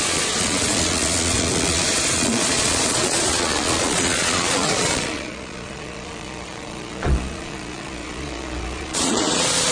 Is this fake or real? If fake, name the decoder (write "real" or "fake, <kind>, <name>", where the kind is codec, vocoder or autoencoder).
fake, vocoder, Vocos